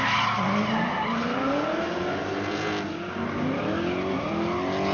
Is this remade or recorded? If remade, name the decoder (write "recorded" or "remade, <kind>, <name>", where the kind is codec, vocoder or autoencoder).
recorded